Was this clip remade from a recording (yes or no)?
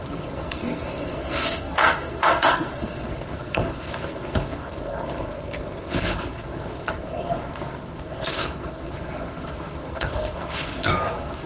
yes